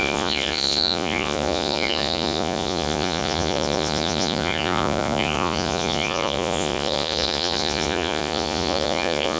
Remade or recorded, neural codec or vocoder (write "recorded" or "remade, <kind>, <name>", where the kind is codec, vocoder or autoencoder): remade, vocoder, Vocos